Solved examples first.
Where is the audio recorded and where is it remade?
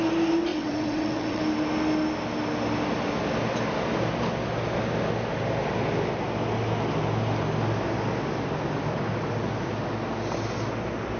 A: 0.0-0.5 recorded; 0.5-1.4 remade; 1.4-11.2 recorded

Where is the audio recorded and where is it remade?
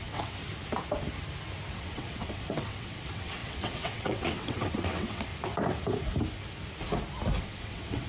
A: 0.0-0.4 remade; 0.4-1.7 recorded; 1.7-5.3 remade; 5.3-7.4 recorded; 7.4-8.1 remade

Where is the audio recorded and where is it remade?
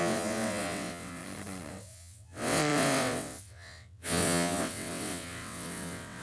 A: 0.0-1.2 remade; 1.2-1.7 recorded; 1.7-6.2 remade